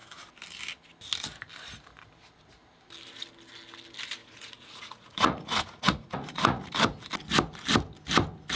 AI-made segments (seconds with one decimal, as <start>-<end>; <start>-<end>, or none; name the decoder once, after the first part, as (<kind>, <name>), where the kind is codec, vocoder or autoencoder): 4.2-6.7 (vocoder, Vocos)